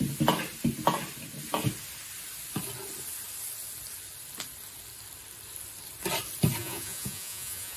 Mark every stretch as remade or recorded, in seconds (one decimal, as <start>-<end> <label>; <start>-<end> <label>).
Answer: 0.0-6.6 recorded; 6.6-7.8 remade

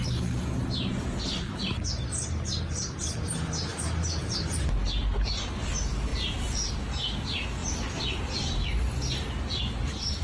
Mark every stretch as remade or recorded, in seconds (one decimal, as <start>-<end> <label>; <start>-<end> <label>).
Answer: 0.0-10.2 recorded

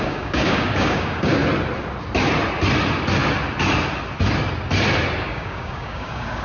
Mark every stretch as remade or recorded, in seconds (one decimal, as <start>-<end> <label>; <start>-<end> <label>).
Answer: 0.0-1.4 remade; 1.4-5.2 recorded; 5.2-6.4 remade

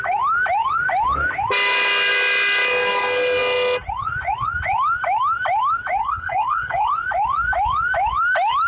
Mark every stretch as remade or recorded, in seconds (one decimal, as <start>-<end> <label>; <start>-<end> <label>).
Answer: 0.0-6.0 recorded; 6.0-6.9 remade; 6.9-8.7 recorded

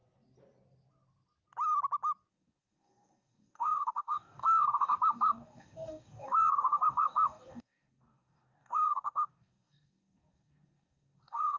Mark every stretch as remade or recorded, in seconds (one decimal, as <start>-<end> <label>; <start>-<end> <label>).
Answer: 0.0-2.3 recorded; 2.3-11.6 remade

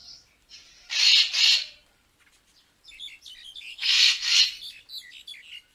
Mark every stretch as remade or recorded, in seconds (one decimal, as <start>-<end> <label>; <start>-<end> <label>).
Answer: 0.0-3.7 recorded; 3.7-4.4 remade; 4.4-5.7 recorded

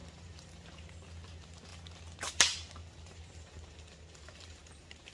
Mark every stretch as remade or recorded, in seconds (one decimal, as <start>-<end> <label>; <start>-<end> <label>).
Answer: 0.0-0.9 remade; 0.9-2.8 recorded; 2.8-5.1 remade